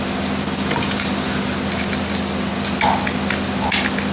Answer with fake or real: real